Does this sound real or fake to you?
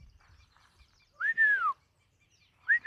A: fake